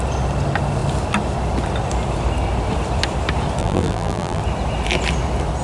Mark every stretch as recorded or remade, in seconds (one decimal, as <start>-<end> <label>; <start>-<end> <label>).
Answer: 0.0-3.6 recorded; 3.6-4.4 remade; 4.4-5.6 recorded